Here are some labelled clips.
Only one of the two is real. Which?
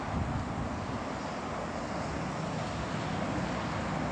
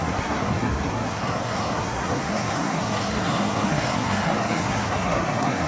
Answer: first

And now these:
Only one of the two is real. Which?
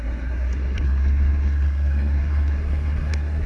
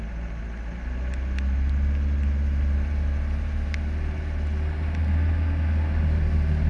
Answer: second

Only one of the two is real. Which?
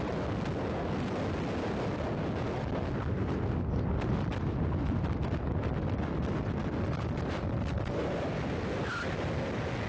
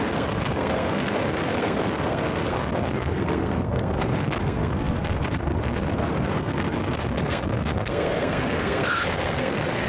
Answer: first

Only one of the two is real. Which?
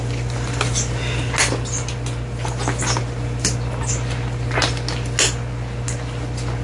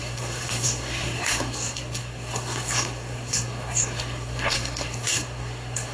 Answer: first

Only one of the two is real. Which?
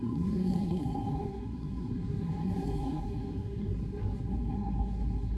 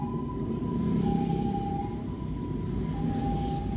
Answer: second